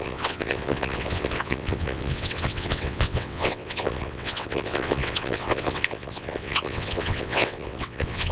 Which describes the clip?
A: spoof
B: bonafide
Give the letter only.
A